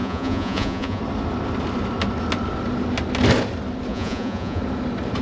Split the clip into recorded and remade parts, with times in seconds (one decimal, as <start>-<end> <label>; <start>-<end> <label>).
0.0-1.0 remade; 1.0-3.9 recorded; 3.9-4.6 remade; 4.6-5.2 recorded